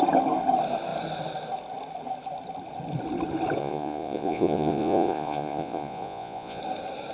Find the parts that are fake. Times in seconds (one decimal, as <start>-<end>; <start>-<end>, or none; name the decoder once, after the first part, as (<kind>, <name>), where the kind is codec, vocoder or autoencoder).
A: 3.6-6.6 (vocoder, Vocos)